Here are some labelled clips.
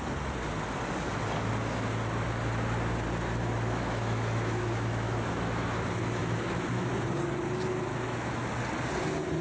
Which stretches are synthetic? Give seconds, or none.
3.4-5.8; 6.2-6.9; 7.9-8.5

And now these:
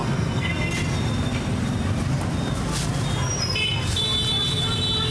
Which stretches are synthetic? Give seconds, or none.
0.0-0.5

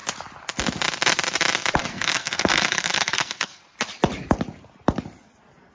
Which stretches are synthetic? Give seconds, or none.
1.9-3.6